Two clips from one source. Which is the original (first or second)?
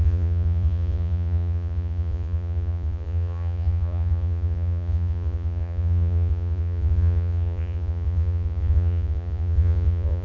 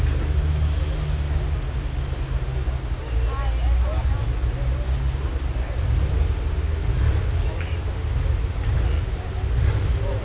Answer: second